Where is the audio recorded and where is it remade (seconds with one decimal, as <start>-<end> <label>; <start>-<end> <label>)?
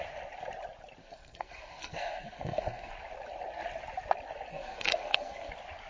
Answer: 0.0-1.0 recorded; 1.0-2.9 remade; 2.9-4.5 recorded; 4.5-5.5 remade; 5.5-5.9 recorded